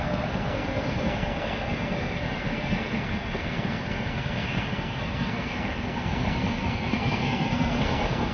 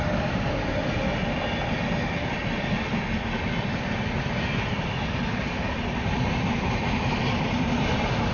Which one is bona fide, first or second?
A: second